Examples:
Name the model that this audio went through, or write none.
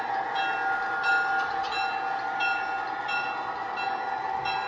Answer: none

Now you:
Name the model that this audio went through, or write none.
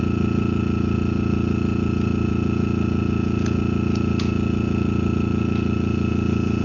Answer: vocoder, Vocos